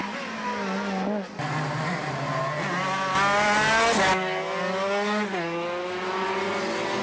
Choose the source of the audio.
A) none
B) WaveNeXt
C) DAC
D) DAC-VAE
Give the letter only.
A